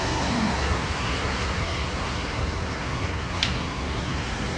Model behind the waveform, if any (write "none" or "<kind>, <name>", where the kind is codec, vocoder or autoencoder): codec, SNAC